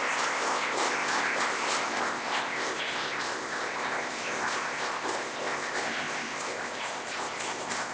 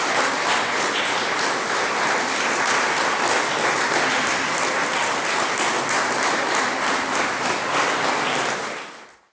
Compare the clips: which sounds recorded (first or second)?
second